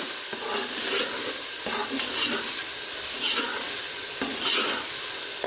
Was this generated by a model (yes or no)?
no